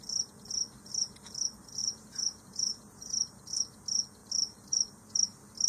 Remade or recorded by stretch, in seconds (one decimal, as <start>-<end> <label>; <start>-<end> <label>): 0.0-1.8 recorded; 1.8-3.4 remade; 3.4-4.2 recorded; 4.2-5.0 remade; 5.0-5.7 recorded